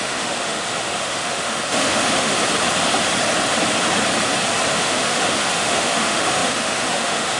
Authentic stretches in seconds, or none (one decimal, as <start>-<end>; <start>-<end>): 2.4-4.7